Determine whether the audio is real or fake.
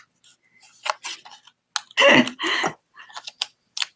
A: real